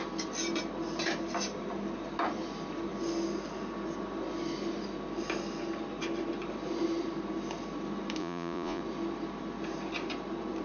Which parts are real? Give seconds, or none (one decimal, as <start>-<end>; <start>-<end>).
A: 0.0-8.2; 8.8-10.6